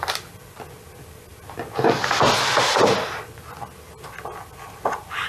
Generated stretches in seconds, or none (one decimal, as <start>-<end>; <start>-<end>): none